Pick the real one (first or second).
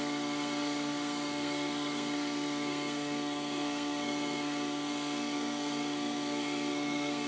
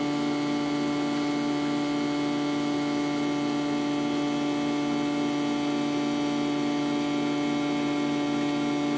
second